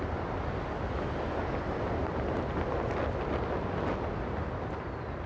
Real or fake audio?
real